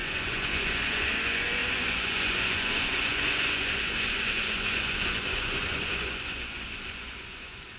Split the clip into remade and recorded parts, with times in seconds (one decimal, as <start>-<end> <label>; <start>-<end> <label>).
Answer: 0.0-7.8 remade